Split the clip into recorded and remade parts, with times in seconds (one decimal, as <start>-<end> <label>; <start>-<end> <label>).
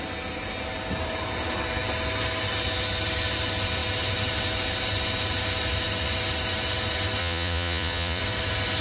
0.0-7.2 recorded; 7.2-8.2 remade; 8.2-8.8 recorded